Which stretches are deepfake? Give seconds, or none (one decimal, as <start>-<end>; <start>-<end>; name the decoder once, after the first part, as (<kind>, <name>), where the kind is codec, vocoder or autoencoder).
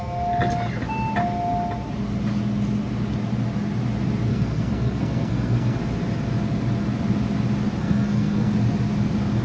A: 4.3-5.8 (codec, SNAC); 7.8-8.5